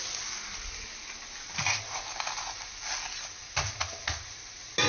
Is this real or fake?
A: real